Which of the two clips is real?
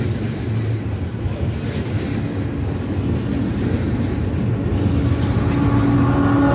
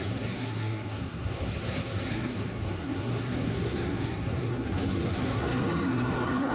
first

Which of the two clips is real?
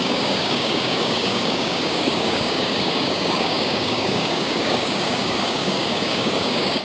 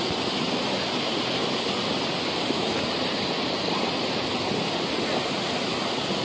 second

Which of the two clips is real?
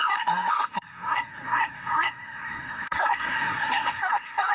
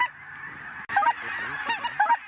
second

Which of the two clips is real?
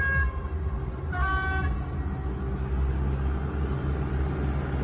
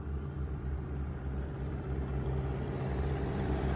first